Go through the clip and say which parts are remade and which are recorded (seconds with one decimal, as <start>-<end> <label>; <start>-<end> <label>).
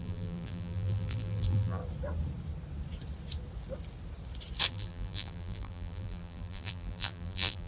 0.0-1.8 remade; 1.8-4.7 recorded; 4.7-7.7 remade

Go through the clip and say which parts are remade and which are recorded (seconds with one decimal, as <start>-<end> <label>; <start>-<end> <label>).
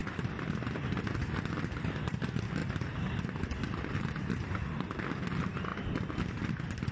0.0-6.9 recorded